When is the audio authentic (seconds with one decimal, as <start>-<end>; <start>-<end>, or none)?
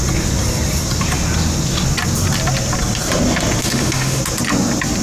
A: 0.0-3.6; 4.2-5.0